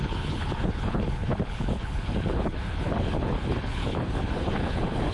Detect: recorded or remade remade